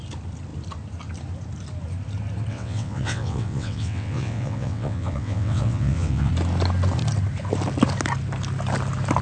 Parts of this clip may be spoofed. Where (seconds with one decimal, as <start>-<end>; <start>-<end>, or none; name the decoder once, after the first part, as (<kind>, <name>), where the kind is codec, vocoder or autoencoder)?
2.5-6.3 (vocoder, WaveNeXt)